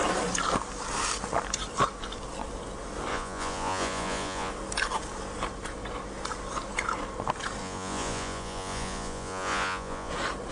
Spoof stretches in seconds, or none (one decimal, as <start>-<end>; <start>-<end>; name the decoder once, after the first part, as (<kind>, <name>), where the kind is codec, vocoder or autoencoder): 3.1-4.5 (vocoder, Vocos); 7.6-10.1